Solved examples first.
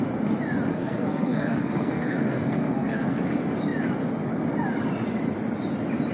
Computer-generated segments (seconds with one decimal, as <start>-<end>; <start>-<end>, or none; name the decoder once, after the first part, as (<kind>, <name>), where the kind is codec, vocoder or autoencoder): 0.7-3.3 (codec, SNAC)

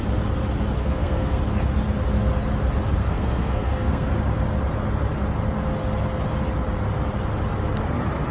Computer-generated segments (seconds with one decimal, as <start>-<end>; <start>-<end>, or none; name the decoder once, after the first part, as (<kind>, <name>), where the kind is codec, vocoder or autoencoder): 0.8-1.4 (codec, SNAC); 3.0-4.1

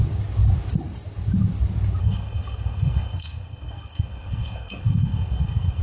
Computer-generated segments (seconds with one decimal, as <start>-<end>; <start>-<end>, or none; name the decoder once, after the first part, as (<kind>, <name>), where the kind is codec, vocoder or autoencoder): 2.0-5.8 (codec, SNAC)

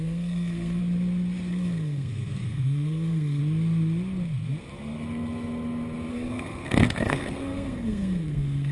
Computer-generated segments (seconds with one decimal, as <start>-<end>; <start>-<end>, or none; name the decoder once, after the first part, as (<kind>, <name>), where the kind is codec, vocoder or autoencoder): 0.0-0.8 (codec, SNAC); 1.5-3.4; 6.1-8.7